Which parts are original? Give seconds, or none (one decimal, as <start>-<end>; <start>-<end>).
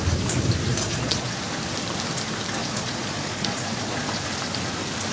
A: 0.0-0.7; 1.4-2.6; 4.3-5.1